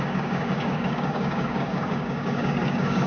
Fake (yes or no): yes